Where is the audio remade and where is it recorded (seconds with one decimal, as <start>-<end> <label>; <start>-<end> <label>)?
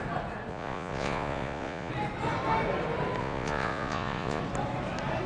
0.0-0.5 recorded; 0.5-1.9 remade; 1.9-3.2 recorded; 3.2-4.4 remade; 4.4-5.3 recorded